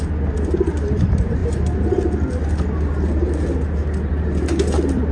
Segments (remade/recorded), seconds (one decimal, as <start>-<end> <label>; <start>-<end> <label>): 0.0-5.1 recorded